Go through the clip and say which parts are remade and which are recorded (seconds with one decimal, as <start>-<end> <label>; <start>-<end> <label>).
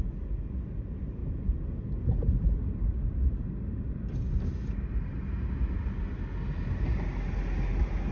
0.0-8.1 recorded